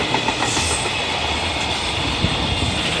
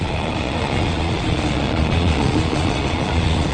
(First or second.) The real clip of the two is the first